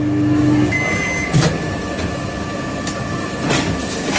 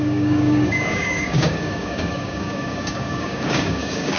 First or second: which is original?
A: first